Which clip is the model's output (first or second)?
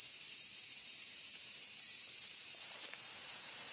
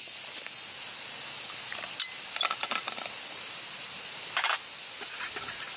first